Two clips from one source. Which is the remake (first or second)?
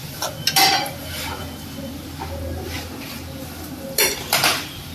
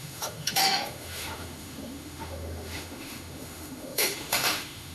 second